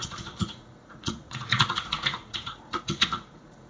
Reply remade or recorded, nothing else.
remade